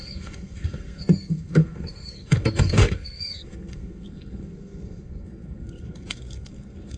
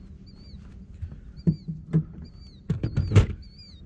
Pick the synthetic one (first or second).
first